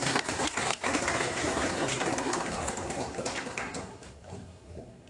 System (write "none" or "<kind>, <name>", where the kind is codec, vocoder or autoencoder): codec, SNAC